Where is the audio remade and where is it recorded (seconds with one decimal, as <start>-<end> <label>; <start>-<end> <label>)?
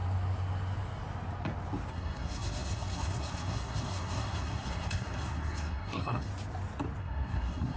0.0-1.9 recorded; 1.9-6.3 remade; 6.3-7.0 recorded; 7.0-7.8 remade